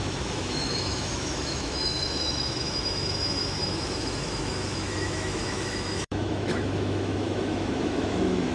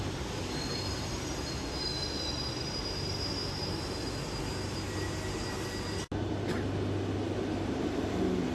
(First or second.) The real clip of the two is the second